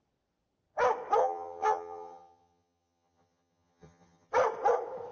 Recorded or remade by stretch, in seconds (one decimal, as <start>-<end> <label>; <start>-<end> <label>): 0.0-1.2 recorded; 1.2-4.3 remade; 4.3-5.1 recorded